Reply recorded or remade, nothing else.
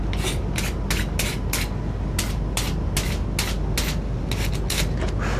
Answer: recorded